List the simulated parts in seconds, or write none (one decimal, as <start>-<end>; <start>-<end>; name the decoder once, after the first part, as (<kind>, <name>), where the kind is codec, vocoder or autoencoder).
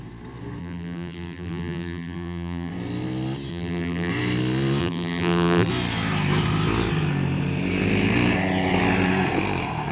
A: 0.6-2.7 (vocoder, BigVGAN v2); 3.5-4.1; 4.8-5.7